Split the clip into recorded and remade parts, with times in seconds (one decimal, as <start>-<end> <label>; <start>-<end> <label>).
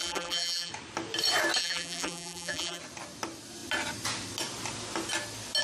0.0-0.7 remade; 0.7-1.6 recorded; 1.6-2.8 remade; 2.8-5.6 recorded